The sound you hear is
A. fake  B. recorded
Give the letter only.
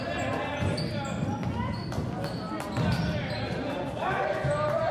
B